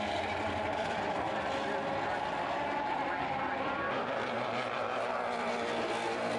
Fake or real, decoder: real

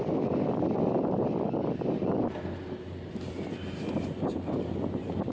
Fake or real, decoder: real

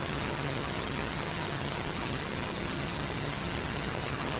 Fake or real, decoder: fake, vocoder, HiFi-GAN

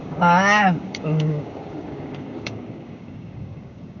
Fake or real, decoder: fake, codec, DAC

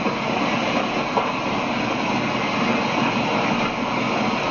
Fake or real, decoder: real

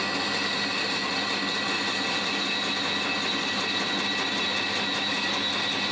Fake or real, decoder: real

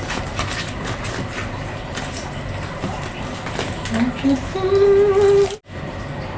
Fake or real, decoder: real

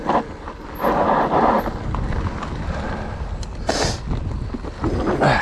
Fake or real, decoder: real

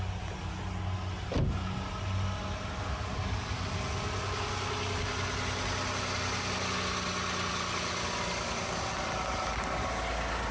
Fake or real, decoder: real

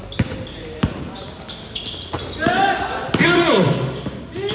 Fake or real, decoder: real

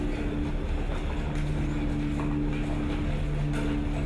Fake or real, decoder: real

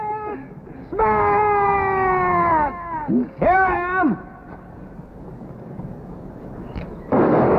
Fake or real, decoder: fake, codec, DAC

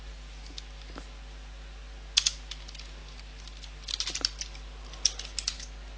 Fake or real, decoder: real